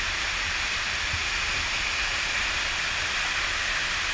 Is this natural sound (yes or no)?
yes